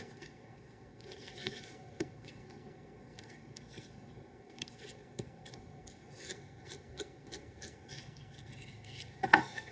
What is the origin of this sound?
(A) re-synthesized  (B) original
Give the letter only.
A